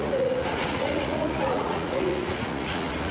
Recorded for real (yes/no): no